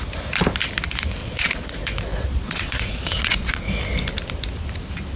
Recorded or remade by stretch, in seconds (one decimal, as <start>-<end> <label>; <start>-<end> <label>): 0.0-1.2 recorded; 1.2-3.8 remade; 3.8-5.2 recorded